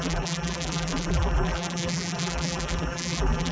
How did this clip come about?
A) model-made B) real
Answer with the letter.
A